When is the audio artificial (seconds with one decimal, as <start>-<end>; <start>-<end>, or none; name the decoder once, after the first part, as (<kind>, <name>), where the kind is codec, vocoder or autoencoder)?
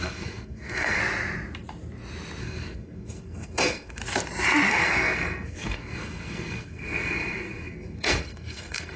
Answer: 0.0-1.0 (codec, SNAC); 2.4-4.0; 4.7-9.0